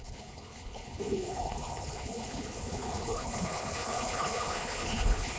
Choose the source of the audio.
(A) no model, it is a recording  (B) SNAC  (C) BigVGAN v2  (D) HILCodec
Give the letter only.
D